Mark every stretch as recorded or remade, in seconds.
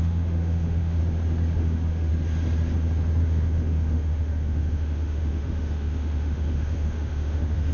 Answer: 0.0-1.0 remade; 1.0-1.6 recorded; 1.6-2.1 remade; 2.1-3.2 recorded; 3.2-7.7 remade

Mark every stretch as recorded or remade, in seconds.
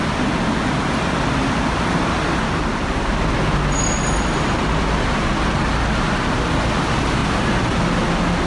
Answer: 0.0-8.5 recorded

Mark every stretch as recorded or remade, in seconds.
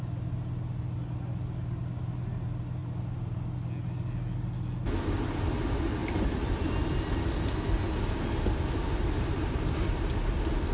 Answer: 0.0-10.7 recorded